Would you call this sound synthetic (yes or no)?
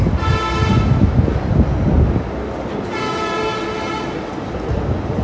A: no